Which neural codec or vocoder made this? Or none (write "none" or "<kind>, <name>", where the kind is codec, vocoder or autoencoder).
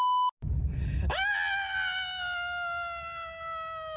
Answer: none